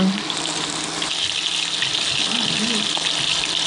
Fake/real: real